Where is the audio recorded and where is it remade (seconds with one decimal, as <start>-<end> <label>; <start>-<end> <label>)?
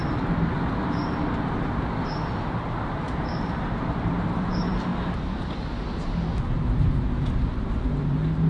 0.0-2.9 recorded; 2.9-4.9 remade; 4.9-7.6 recorded; 7.6-8.5 remade